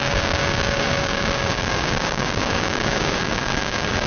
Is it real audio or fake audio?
fake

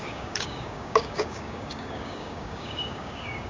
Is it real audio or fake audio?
fake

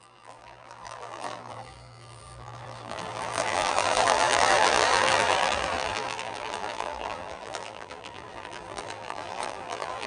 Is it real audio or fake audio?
fake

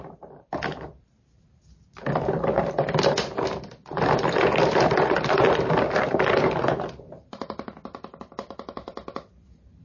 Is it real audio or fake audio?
fake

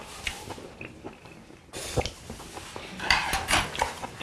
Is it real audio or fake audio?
real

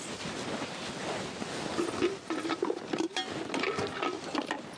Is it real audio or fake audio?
real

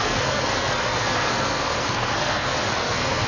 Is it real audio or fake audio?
fake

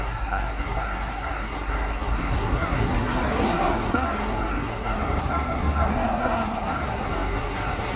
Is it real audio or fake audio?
fake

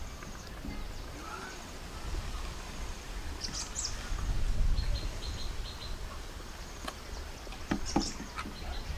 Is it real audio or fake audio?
real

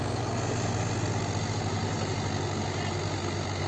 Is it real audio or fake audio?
real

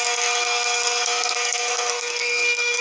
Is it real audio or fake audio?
fake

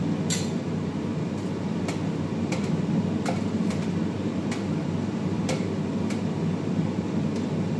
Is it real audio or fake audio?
fake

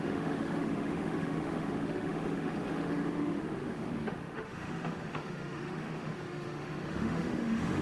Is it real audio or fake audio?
fake